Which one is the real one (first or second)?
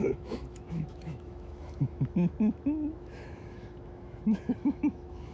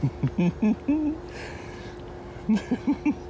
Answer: second